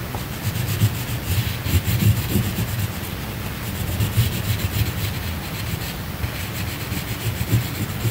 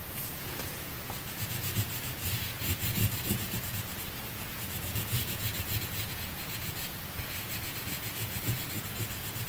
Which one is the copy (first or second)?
second